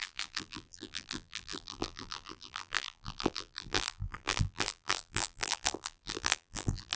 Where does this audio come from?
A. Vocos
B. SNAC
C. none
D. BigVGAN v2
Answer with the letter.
D